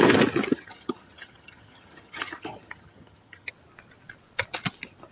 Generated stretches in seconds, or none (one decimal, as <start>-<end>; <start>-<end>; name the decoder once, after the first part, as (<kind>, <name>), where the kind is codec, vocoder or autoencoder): 0.4-3.5 (vocoder, HiFi-GAN)